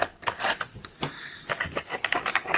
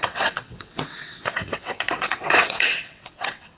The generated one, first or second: second